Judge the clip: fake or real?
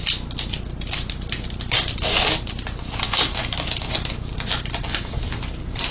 real